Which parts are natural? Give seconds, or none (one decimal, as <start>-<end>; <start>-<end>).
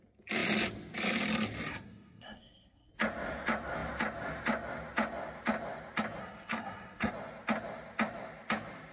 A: 0.0-1.7; 2.9-6.2; 7.1-8.9